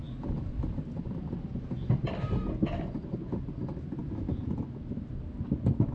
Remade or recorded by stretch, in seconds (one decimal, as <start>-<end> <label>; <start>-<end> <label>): 0.0-5.9 recorded